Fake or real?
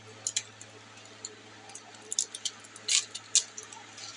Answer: real